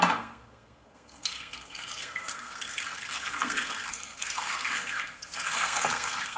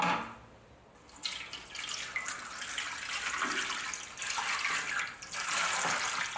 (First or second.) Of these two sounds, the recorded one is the second